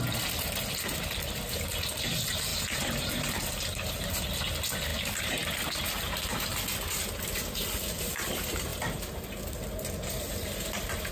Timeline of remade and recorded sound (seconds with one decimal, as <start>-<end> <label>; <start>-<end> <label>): 0.0-2.5 recorded; 2.5-3.6 remade; 3.6-11.1 recorded